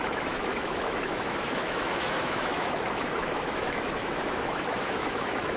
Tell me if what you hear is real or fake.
fake